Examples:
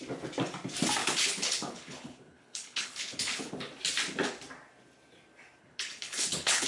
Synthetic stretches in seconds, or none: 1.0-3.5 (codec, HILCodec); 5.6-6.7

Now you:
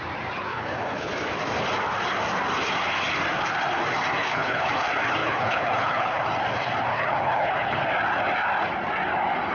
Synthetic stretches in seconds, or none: 0.5-1.1 (codec, HILCodec); 4.2-4.7; 5.2-6.2; 6.9-7.8

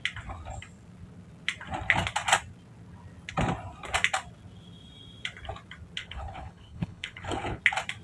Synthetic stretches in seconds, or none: 6.0-7.6 (codec, HILCodec)

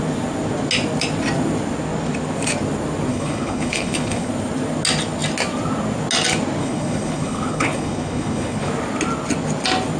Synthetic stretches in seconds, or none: 3.1-4.3 (codec, HILCodec); 6.6-8.7

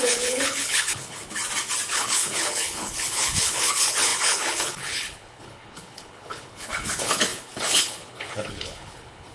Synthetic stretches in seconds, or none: 0.0-1.4 (codec, HILCodec); 1.9-9.3

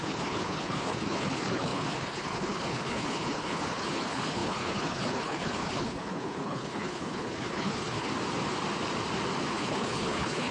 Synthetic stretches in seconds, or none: 0.0-8.1 (codec, HILCodec); 9.5-10.5

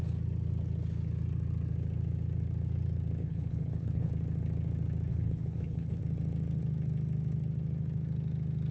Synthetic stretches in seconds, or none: 3.2-4.1 (codec, HILCodec); 5.1-6.0

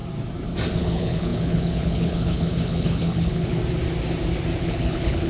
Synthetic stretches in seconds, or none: 0.8-3.6 (codec, HILCodec); 4.6-5.3